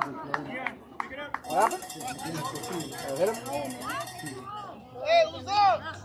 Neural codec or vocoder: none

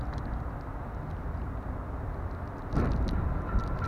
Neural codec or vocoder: none